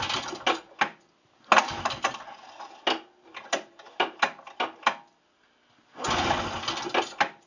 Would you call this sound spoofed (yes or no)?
no